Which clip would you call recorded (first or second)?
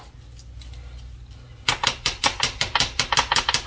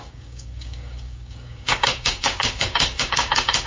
first